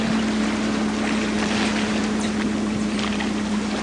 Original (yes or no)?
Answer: yes